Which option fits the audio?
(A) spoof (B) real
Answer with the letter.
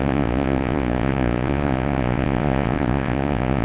A